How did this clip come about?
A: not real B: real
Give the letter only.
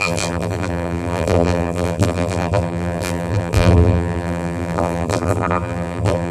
A